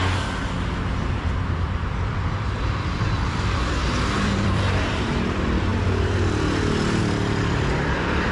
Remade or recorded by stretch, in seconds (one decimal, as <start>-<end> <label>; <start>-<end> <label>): 0.0-1.1 recorded; 1.1-8.3 remade